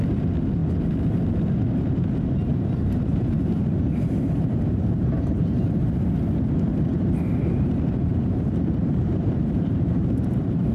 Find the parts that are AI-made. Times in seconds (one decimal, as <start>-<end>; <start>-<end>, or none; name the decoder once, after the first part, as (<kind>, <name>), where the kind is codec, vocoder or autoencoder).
2.5-5.8 (vocoder, BigVGAN v2); 6.9-7.7; 8.1-10.7